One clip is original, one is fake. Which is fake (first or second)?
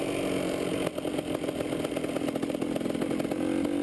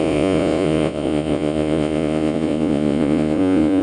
second